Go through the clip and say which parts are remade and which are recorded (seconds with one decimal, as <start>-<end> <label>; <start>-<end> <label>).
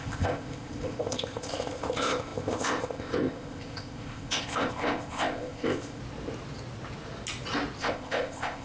0.0-6.0 remade; 6.0-7.8 recorded; 7.8-8.6 remade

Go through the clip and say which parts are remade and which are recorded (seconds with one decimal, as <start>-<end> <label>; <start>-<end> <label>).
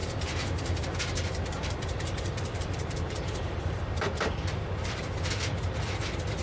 0.0-1.0 remade; 1.0-1.5 recorded; 1.5-5.0 remade; 5.0-6.4 recorded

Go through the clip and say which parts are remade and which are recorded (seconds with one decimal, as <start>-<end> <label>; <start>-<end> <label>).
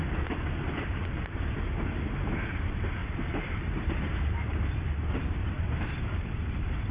0.0-3.0 recorded; 3.0-6.3 remade; 6.3-6.9 recorded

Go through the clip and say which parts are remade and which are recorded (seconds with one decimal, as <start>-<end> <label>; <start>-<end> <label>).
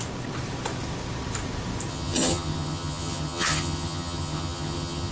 0.0-1.9 recorded; 1.9-5.1 remade